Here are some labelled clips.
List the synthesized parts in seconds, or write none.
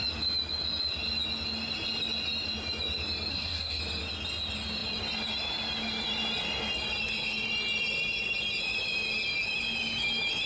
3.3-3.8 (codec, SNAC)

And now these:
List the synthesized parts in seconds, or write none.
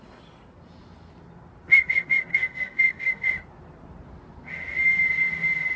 2.3-3.3 (codec, SNAC)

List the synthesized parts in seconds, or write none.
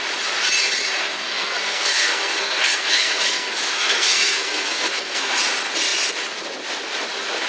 1.0-5.4 (codec, SNAC)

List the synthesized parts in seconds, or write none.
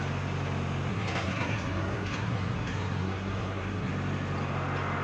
0.9-3.9 (codec, SNAC)